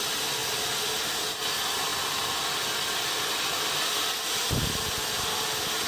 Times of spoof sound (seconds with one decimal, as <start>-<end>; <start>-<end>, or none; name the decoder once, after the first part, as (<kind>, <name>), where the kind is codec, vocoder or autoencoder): none